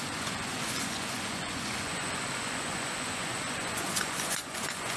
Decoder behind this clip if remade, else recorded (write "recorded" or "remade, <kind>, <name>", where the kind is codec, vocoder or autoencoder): remade, vocoder, Vocos